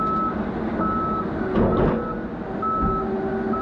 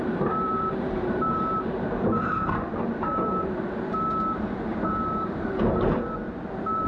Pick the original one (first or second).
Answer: first